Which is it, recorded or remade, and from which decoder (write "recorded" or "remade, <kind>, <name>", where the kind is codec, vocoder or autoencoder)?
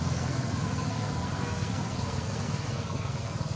remade, codec, SNAC